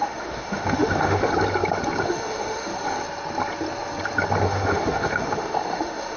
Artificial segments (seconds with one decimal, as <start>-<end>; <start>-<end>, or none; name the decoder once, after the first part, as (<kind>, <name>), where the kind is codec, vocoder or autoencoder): 0.0-1.3 (autoencoder, DAC-VAE); 2.0-2.7; 4.4-6.2